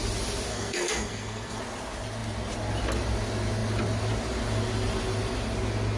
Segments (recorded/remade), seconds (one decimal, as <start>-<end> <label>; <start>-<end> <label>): 0.0-0.5 recorded; 0.5-1.6 remade; 1.6-6.0 recorded

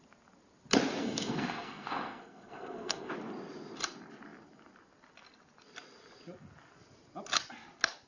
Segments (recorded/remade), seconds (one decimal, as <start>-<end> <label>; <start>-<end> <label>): 0.0-1.0 recorded; 1.0-3.1 remade; 3.1-8.1 recorded

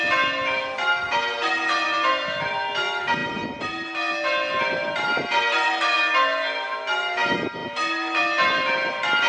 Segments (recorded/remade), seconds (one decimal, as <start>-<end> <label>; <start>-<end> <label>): 0.0-9.3 recorded

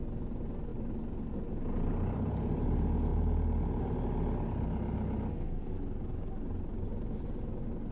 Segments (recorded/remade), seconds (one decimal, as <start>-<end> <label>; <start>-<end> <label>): 0.0-5.3 recorded; 5.3-5.8 remade; 5.8-7.9 recorded

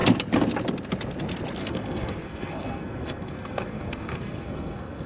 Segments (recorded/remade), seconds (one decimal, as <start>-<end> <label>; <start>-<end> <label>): 0.0-1.6 recorded; 1.6-5.1 remade